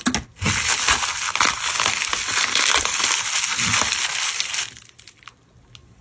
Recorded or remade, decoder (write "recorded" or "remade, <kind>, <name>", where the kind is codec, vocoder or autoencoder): recorded